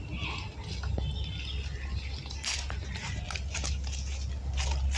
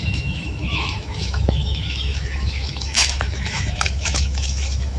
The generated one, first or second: second